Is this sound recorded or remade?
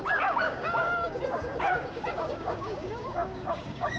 remade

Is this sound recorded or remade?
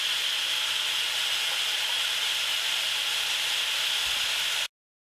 recorded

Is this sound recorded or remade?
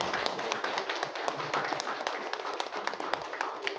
recorded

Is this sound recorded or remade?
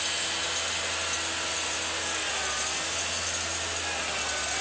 recorded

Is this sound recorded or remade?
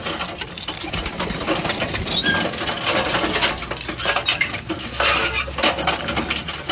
recorded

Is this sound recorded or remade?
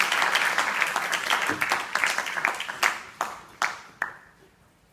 recorded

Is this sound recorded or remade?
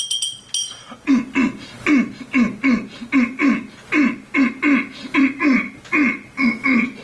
recorded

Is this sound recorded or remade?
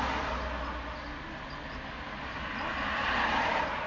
recorded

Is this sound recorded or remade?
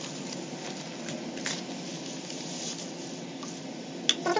recorded